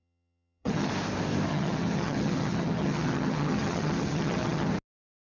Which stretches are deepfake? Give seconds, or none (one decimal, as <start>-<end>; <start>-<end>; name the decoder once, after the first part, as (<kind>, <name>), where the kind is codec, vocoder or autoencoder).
0.0-0.9 (vocoder, HiFi-GAN); 1.5-4.7